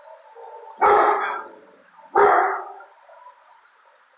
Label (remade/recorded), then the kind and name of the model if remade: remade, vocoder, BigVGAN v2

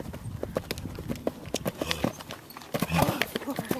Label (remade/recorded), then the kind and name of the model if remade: recorded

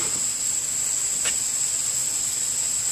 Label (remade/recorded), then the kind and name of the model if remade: recorded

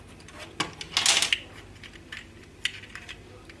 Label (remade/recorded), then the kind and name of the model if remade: recorded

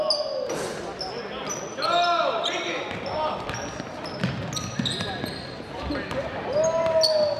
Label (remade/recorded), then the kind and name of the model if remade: recorded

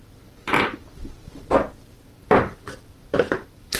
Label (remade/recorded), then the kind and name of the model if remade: remade, vocoder, BigVGAN v2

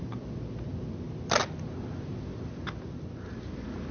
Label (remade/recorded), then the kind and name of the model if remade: recorded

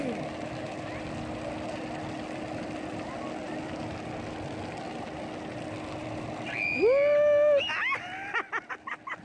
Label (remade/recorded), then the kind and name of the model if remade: recorded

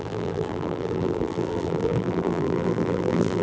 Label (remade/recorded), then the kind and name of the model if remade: remade, vocoder, BigVGAN v2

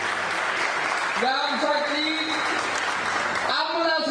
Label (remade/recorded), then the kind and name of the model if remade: recorded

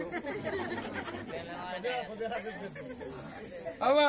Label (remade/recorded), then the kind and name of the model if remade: recorded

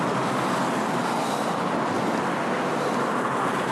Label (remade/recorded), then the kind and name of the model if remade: recorded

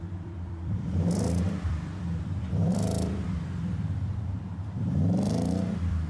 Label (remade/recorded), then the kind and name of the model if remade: remade, vocoder, BigVGAN v2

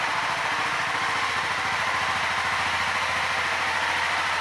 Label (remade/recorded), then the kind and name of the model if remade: recorded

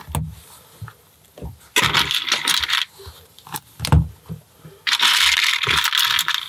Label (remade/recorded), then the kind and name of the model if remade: recorded